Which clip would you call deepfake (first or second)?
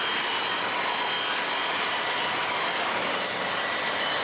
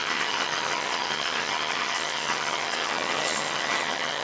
second